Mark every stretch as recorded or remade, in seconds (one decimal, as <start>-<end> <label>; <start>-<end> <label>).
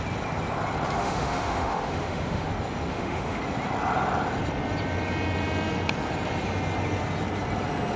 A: 0.0-1.0 recorded; 1.0-2.5 remade; 2.5-2.9 recorded; 2.9-3.4 remade; 3.4-8.0 recorded